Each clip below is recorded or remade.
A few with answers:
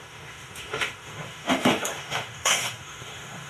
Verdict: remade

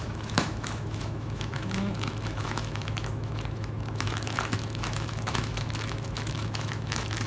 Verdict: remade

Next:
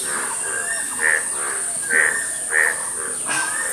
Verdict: recorded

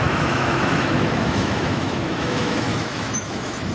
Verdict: remade